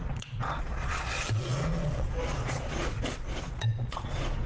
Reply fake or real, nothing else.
fake